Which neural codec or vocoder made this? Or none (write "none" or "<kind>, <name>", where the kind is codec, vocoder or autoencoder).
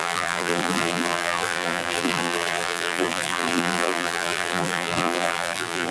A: vocoder, BigVGAN v2